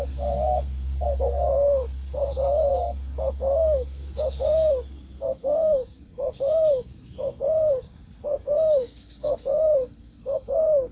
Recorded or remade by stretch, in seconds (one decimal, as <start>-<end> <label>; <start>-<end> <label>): 0.0-10.9 remade